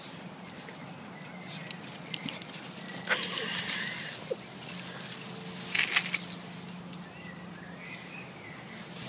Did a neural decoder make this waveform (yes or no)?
no